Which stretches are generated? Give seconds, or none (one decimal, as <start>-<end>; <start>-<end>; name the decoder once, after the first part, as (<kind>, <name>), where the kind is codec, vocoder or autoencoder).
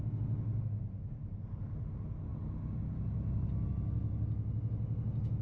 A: none